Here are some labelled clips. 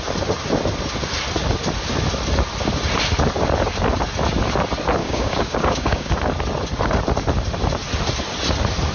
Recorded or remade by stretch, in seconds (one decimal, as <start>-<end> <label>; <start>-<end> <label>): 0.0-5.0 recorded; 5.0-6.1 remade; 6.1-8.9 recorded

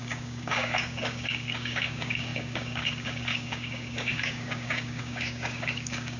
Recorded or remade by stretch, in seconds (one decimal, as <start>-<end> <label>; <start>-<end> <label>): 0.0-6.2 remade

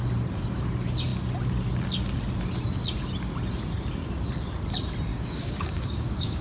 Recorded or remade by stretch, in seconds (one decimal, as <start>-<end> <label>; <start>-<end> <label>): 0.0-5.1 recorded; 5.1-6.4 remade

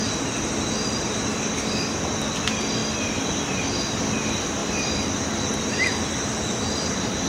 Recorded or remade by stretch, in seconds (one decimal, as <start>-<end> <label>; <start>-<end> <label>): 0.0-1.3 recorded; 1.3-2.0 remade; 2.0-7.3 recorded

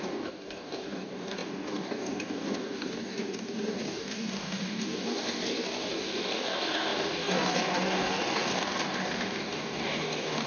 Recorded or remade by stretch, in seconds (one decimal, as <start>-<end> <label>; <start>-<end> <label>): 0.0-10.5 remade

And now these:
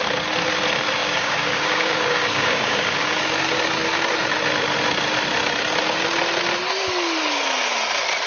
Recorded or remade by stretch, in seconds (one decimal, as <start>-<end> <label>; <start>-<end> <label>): 0.0-1.0 recorded; 1.0-3.2 remade; 3.2-8.3 recorded

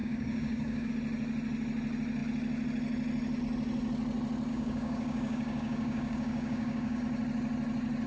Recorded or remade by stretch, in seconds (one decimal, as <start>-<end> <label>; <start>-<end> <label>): 0.0-0.9 remade; 0.9-4.5 recorded; 4.5-7.0 remade; 7.0-8.1 recorded

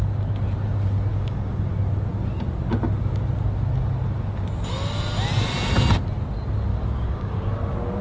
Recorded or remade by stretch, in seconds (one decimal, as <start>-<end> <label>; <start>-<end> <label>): 0.0-1.1 recorded; 1.1-1.7 remade; 1.7-6.7 recorded; 6.7-7.5 remade; 7.5-8.0 recorded